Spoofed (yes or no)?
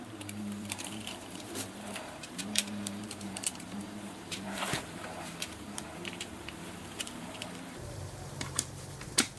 yes